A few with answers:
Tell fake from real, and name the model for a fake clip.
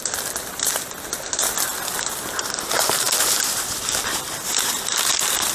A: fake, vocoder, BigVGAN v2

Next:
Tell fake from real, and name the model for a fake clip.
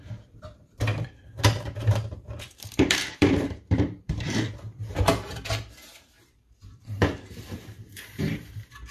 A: fake, vocoder, BigVGAN v2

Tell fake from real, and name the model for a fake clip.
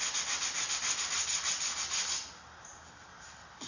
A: real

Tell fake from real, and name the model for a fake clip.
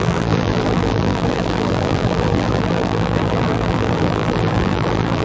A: fake, vocoder, BigVGAN v2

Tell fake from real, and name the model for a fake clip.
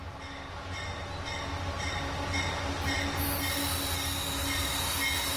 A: real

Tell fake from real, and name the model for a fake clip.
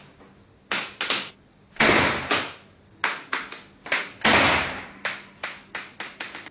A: real